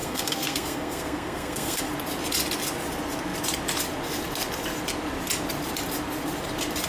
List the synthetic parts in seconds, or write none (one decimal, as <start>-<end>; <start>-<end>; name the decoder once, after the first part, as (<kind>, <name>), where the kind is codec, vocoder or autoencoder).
0.0-1.8 (codec, SNAC)